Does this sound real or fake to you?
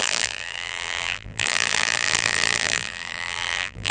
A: fake